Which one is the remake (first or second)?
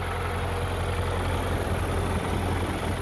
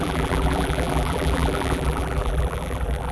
second